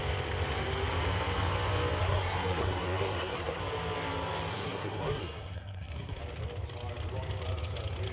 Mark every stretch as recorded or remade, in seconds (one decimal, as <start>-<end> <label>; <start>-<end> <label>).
0.0-2.0 recorded; 2.0-3.6 remade; 3.6-4.5 recorded; 4.5-6.2 remade; 6.2-8.1 recorded